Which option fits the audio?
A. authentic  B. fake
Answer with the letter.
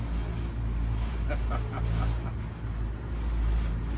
A